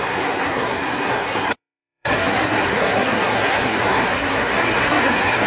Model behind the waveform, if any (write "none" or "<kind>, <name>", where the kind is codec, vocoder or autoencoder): codec, SNAC